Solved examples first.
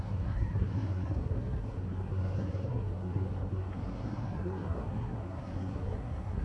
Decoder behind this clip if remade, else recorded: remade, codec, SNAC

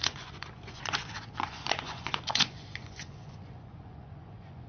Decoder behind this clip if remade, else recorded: remade, vocoder, Vocos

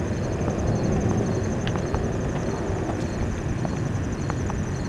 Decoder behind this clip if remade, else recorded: recorded